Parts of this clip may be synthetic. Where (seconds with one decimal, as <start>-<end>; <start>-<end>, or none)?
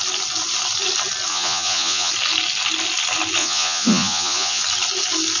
1.3-2.1; 3.4-4.6